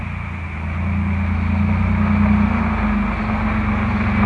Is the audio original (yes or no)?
yes